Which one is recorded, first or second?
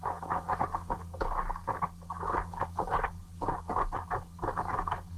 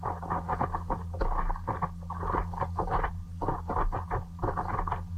second